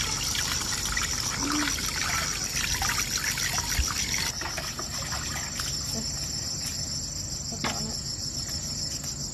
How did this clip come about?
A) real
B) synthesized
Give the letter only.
A